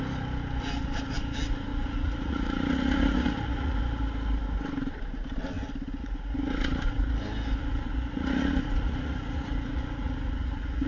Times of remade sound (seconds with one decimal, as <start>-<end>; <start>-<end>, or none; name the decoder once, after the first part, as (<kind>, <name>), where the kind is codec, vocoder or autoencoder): 1.7-3.8 (vocoder, Vocos); 6.0-7.1; 7.6-10.9